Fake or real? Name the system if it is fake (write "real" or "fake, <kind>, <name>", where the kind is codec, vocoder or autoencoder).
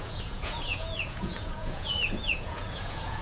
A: fake, vocoder, Vocos